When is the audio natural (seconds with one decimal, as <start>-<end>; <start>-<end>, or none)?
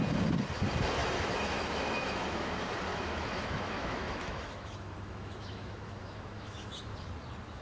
0.0-1.0; 2.5-2.9; 6.9-7.6